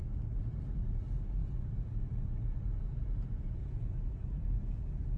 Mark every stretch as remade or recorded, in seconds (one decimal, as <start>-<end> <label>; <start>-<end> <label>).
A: 0.0-1.4 recorded; 1.4-4.5 remade; 4.5-5.2 recorded